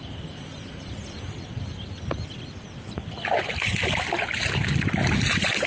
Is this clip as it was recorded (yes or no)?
yes